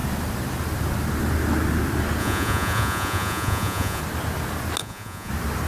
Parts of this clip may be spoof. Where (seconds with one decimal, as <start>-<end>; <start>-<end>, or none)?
2.2-4.0; 4.8-5.3